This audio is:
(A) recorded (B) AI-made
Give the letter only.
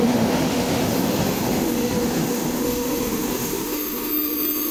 B